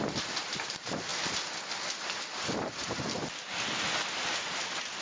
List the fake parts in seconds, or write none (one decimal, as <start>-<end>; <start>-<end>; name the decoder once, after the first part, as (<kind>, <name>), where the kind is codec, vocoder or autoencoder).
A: 0.0-1.1 (vocoder, BigVGAN v2); 4.1-5.0